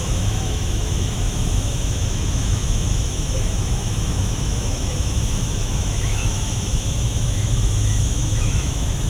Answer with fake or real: fake